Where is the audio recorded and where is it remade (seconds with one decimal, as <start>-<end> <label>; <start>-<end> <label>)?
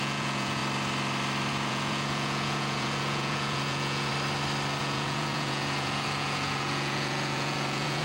0.0-0.6 remade; 0.6-1.5 recorded; 1.5-4.1 remade; 4.1-4.8 recorded; 4.8-8.0 remade